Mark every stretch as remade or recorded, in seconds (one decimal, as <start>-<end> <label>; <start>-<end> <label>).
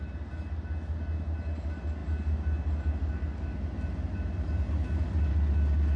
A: 0.0-6.0 recorded